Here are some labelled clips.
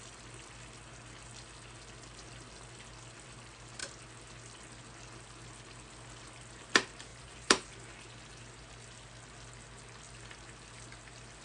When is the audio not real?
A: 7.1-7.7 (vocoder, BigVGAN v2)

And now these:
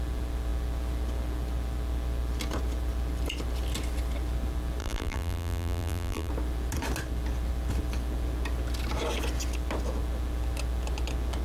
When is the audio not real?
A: 4.8-6.3 (vocoder, BigVGAN v2)